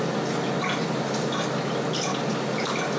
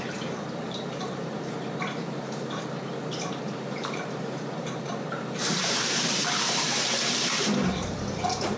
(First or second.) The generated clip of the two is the second